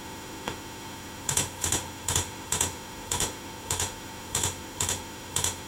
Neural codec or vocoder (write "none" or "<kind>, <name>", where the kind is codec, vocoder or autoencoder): autoencoder, DAC-VAE